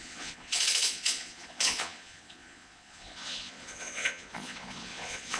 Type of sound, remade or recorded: remade